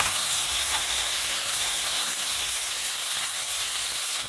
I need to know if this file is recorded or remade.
remade